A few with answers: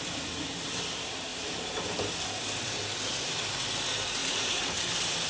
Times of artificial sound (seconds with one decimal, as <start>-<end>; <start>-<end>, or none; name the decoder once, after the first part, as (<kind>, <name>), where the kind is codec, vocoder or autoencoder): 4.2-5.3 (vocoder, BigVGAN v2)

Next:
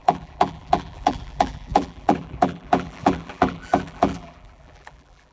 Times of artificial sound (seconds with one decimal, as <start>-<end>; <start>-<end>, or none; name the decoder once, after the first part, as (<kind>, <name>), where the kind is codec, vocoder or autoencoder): 0.0-5.3 (vocoder, BigVGAN v2)

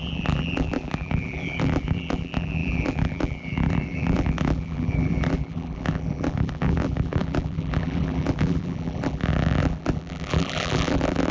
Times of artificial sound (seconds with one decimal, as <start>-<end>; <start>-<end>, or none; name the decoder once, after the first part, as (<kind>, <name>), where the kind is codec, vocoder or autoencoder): 0.0-11.3 (vocoder, BigVGAN v2)

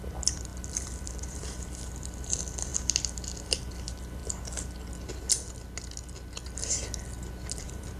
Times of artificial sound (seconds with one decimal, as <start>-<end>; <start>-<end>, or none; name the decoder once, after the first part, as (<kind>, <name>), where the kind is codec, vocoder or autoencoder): 0.0-2.7 (vocoder, BigVGAN v2); 3.4-4.2; 7.6-8.0

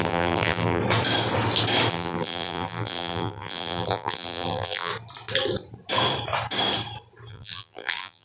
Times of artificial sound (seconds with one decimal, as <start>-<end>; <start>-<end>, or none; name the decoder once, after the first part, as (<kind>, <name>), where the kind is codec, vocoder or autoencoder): 0.0-0.8 (vocoder, BigVGAN v2); 1.9-4.9; 7.3-8.2

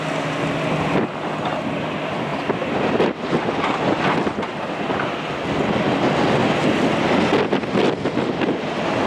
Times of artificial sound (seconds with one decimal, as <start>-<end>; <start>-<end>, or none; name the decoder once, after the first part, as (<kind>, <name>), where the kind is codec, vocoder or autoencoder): 2.3-4.5 (vocoder, BigVGAN v2); 6.4-8.0